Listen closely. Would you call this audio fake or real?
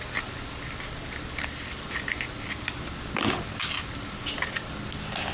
real